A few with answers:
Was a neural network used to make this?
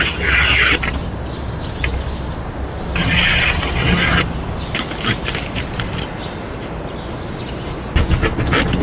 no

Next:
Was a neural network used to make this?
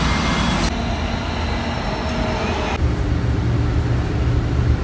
no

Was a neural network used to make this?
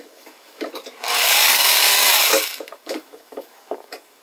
yes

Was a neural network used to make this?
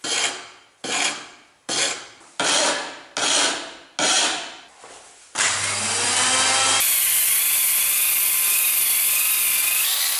no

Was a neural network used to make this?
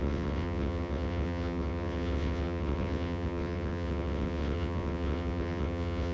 yes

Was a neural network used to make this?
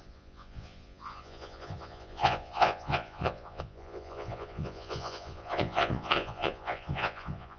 yes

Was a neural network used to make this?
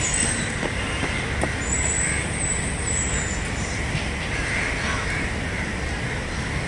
no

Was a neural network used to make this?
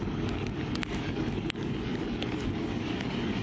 yes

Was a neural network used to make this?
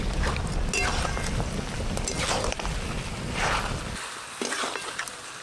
no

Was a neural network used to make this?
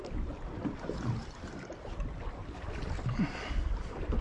no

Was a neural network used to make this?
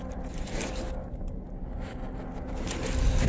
no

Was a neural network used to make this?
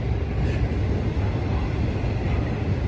no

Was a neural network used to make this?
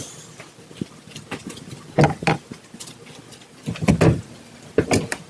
no